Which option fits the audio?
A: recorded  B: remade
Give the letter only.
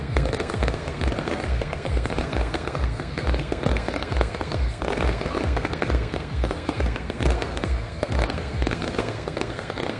B